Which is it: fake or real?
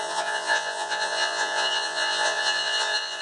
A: fake